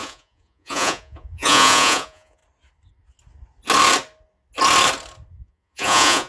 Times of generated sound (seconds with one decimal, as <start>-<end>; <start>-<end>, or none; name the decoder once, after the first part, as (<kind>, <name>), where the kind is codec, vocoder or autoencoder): 0.0-2.4 (vocoder, Vocos); 5.3-6.3